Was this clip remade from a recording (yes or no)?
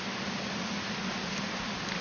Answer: no